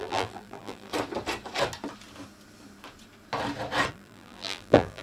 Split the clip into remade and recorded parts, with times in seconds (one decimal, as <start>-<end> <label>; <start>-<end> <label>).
0.0-0.9 remade; 0.9-3.9 recorded; 3.9-5.0 remade